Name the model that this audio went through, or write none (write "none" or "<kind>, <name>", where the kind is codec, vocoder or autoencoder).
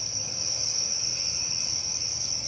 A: codec, DAC